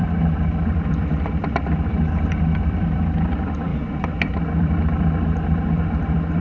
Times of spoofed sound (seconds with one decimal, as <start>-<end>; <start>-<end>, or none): 0.0-3.7; 4.4-6.4